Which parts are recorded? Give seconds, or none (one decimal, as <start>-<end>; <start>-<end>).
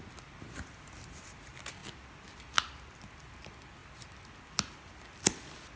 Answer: 0.0-5.8